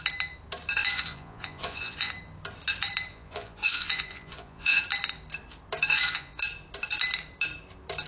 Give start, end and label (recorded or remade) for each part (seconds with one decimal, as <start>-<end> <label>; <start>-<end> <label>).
0.0-0.8 recorded; 0.8-2.1 remade; 2.1-3.1 recorded; 3.1-4.8 remade; 4.8-5.9 recorded; 5.9-6.4 remade; 6.4-8.1 recorded